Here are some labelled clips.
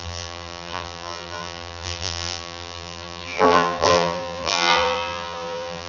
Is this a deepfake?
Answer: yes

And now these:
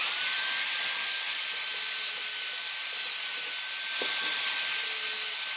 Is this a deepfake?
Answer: no